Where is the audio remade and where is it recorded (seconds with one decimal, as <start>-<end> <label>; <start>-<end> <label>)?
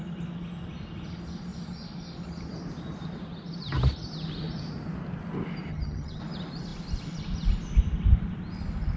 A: 0.0-5.7 recorded; 5.7-6.2 remade; 6.2-9.0 recorded